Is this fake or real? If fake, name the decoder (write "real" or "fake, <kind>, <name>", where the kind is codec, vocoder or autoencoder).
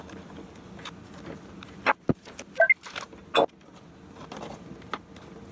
real